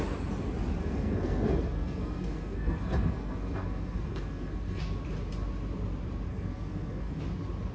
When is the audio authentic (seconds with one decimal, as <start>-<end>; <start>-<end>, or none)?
0.0-0.8; 4.8-6.3; 7.2-7.7